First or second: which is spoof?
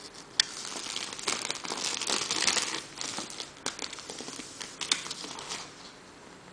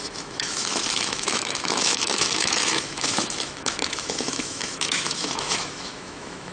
second